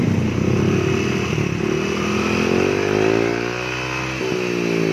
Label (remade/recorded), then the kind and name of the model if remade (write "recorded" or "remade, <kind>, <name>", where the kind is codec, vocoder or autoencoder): recorded